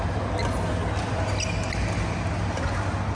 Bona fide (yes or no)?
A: yes